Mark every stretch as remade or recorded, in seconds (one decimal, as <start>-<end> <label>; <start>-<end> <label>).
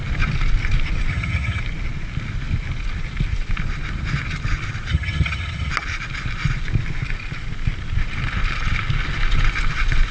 0.0-1.1 recorded; 1.1-1.6 remade; 1.6-4.9 recorded; 4.9-5.7 remade; 5.7-10.1 recorded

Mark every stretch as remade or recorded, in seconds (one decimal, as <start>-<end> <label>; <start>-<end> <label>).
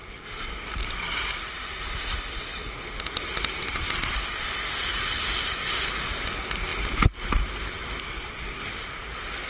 0.0-2.5 recorded; 2.5-4.4 remade; 4.4-9.5 recorded